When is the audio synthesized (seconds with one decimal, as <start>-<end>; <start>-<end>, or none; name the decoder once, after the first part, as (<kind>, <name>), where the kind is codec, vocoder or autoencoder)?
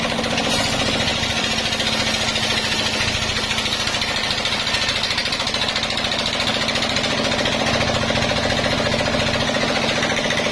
none